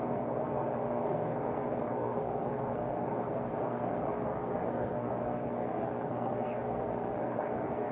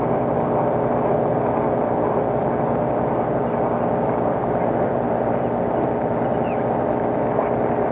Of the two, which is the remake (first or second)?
first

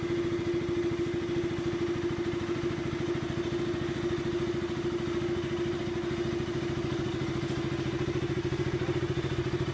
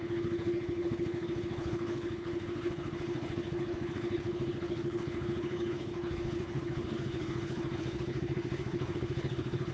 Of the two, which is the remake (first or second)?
second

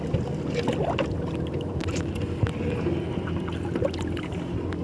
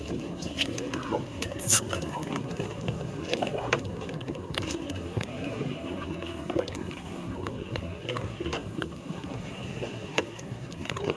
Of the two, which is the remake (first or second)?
second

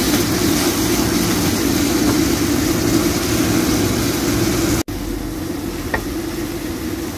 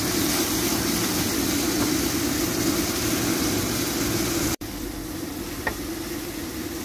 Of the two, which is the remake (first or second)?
second